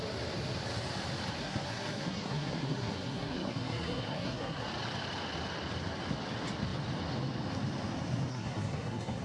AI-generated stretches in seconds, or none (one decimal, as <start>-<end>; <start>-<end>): 1.4-4.7; 8.3-9.2